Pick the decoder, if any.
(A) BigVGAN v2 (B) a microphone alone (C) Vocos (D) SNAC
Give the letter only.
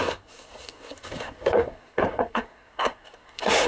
D